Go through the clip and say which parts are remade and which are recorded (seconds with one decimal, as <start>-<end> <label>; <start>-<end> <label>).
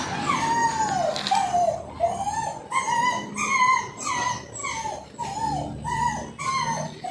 0.0-7.1 recorded